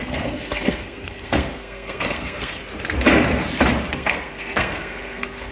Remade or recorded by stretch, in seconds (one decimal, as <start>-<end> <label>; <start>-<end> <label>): 0.0-2.6 remade; 2.6-3.9 recorded; 3.9-5.5 remade